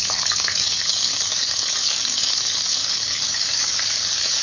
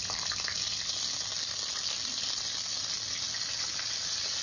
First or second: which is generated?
first